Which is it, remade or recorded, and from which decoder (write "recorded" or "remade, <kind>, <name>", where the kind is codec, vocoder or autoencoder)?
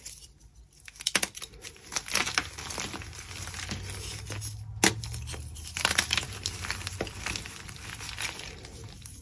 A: recorded